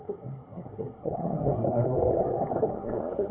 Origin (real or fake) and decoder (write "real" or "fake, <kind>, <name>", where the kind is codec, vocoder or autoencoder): fake, codec, SNAC